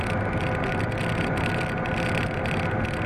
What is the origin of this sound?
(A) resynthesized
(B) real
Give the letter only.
B